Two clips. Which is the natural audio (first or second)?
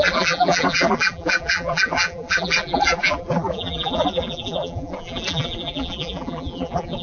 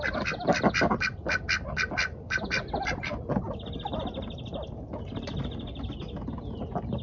second